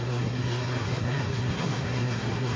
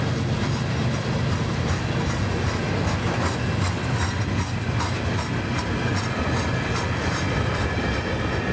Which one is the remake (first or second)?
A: first